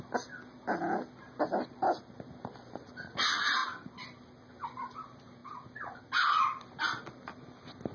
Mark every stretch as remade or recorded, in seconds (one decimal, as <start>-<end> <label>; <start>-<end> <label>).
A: 0.0-7.9 recorded